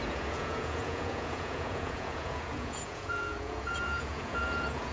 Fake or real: fake